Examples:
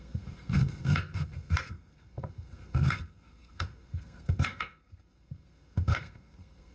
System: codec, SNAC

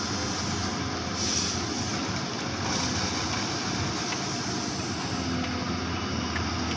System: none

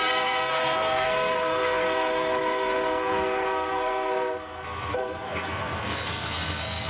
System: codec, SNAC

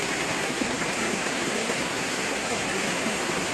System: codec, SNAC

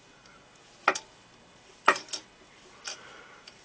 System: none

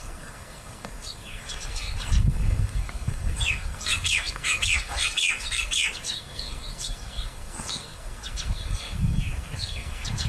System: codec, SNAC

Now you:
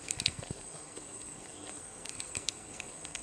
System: codec, SNAC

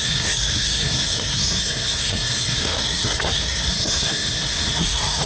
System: codec, SNAC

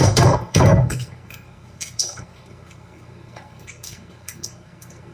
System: codec, SNAC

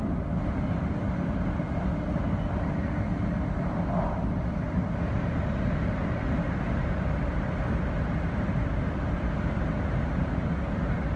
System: none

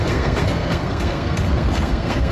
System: codec, SNAC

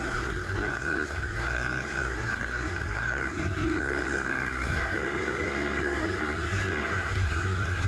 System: codec, SNAC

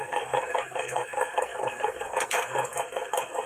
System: codec, SNAC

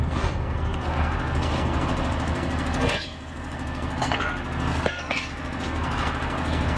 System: codec, SNAC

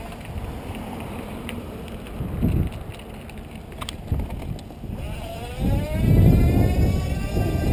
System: none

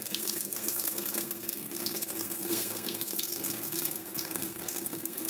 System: codec, SNAC